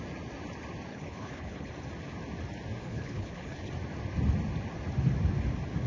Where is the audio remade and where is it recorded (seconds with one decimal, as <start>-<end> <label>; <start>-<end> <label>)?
0.0-0.9 recorded; 0.9-1.7 remade; 1.7-2.8 recorded; 2.8-3.7 remade; 3.7-5.9 recorded